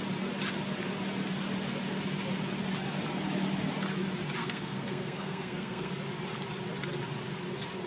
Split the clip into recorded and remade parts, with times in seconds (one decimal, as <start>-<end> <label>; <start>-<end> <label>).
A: 0.0-4.4 recorded; 4.4-5.9 remade; 5.9-7.9 recorded